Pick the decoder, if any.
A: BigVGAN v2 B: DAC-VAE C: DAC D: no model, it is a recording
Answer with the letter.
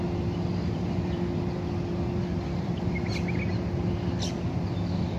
D